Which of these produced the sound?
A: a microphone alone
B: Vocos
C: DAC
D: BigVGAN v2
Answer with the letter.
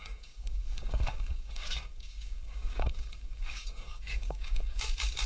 C